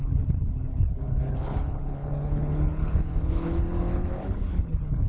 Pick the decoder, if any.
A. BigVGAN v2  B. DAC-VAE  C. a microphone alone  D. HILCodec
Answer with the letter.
D